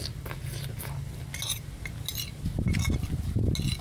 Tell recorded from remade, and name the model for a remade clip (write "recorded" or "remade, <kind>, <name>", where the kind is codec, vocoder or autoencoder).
recorded